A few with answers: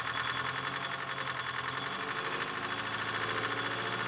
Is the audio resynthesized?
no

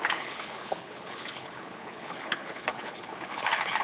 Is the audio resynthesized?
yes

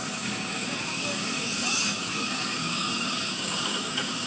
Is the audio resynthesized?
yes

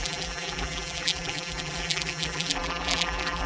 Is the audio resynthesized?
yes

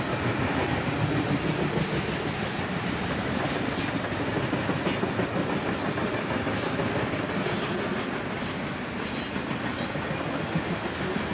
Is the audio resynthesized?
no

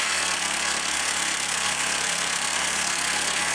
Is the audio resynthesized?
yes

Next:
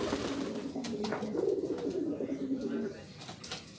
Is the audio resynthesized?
no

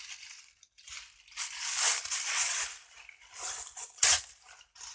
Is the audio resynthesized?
yes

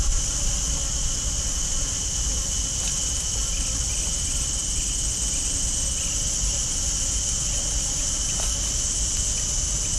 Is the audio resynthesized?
no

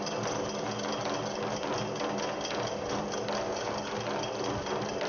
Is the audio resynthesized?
no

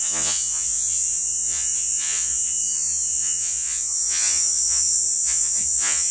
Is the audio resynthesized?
yes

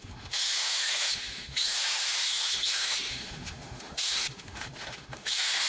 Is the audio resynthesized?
yes